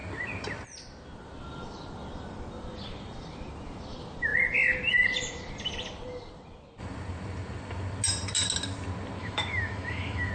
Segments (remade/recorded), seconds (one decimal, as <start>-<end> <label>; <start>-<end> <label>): 0.0-9.2 recorded; 9.2-10.3 remade